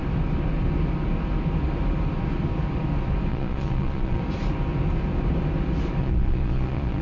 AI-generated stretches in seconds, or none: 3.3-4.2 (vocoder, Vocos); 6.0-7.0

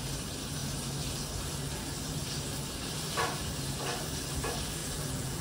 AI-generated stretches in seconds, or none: 4.8-5.4 (vocoder, Vocos)

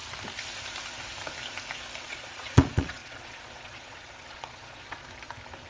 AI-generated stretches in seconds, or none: 2.0-5.0 (vocoder, Vocos)

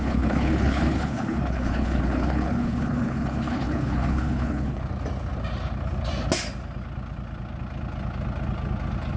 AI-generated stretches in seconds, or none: 0.0-4.8 (codec, HILCodec)

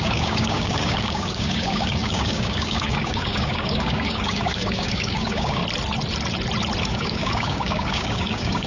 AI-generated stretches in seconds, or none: 0.0-5.6 (codec, DAC); 6.8-8.7

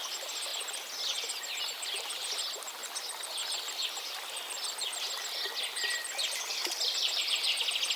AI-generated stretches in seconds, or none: none